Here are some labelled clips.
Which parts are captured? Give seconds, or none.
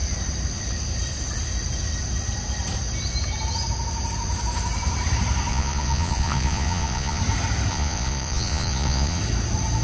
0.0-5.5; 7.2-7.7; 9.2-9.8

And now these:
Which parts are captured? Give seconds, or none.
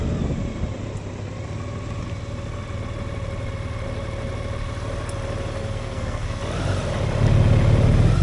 0.0-5.6; 6.4-8.2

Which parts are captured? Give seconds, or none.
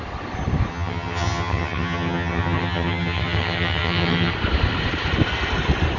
0.0-0.7; 4.3-6.0